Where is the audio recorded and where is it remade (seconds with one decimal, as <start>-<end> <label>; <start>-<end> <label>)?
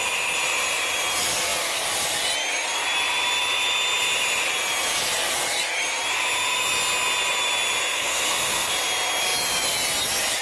0.0-7.9 recorded; 7.9-8.7 remade; 8.7-10.4 recorded